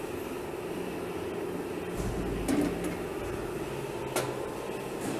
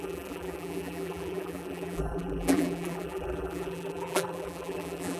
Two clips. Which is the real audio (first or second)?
first